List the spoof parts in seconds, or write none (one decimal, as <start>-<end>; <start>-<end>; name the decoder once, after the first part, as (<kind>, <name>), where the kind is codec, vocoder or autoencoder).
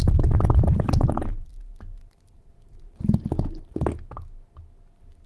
0.0-3.2 (vocoder, BigVGAN v2)